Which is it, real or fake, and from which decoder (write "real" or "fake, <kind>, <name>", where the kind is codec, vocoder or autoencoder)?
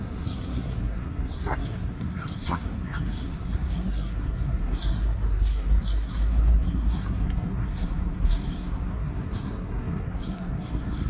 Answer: fake, codec, SNAC